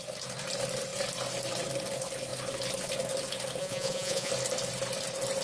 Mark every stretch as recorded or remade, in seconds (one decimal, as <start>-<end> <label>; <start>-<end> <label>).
0.0-3.6 recorded; 3.6-4.3 remade; 4.3-5.4 recorded